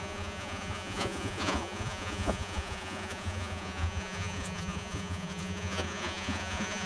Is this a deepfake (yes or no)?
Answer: yes